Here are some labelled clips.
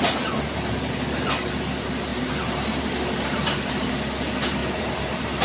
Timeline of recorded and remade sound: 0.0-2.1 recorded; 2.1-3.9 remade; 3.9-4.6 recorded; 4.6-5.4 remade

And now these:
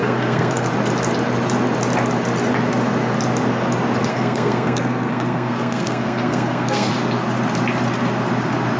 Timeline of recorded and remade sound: 0.0-0.7 remade; 0.7-4.1 recorded; 4.1-6.9 remade; 6.9-8.8 recorded

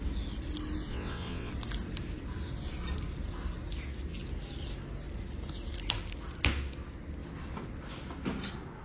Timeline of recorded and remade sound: 0.0-0.9 recorded; 0.9-1.5 remade; 1.5-8.8 recorded